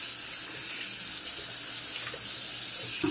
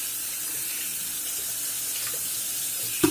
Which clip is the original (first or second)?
first